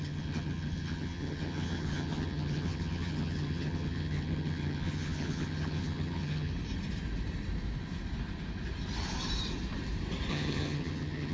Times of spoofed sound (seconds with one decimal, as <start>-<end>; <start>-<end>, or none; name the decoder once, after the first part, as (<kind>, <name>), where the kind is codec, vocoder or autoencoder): 0.0-6.5 (vocoder, HiFi-GAN); 10.3-11.3